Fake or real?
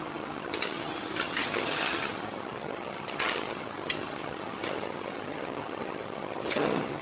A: fake